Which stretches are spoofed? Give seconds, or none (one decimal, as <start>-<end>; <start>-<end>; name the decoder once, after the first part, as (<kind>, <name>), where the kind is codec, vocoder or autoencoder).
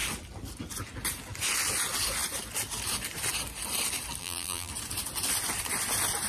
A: 4.2-4.7 (vocoder, BigVGAN v2)